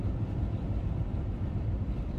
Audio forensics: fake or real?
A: real